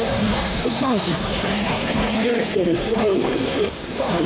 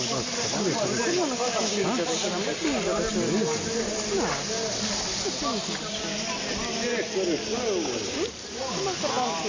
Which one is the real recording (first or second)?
second